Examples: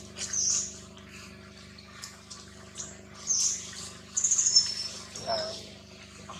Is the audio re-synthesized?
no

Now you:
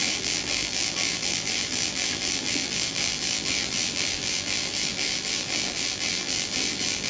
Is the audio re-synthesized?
yes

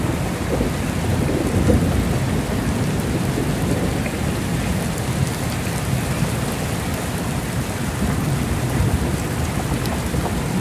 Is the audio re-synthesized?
no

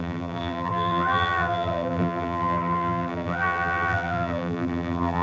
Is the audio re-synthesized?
yes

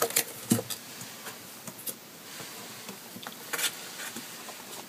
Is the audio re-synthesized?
no